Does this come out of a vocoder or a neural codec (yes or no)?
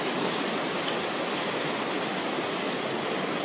no